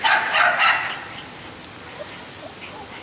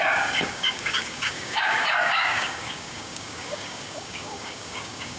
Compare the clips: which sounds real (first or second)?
first